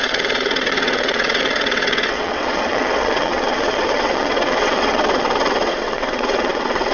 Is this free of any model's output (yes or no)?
no